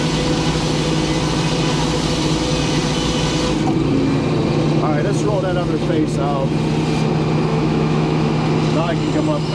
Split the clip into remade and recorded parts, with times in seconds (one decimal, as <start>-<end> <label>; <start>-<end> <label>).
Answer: 0.0-7.5 recorded; 7.5-8.3 remade; 8.3-9.5 recorded